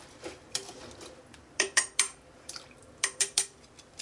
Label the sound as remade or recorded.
remade